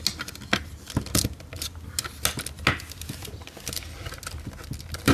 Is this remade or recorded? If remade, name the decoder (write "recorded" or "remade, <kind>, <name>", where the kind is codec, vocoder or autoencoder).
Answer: recorded